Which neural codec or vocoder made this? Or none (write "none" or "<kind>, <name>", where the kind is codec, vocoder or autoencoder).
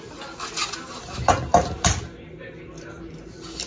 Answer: none